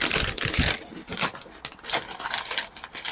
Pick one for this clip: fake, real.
real